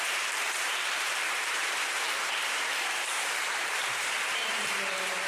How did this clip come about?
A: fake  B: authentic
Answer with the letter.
A